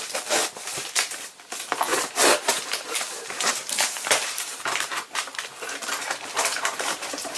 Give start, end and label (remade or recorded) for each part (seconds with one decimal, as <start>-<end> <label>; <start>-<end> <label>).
0.0-0.7 recorded; 0.7-1.3 remade; 1.3-1.9 recorded; 1.9-5.5 remade; 5.5-6.0 recorded; 6.0-7.4 remade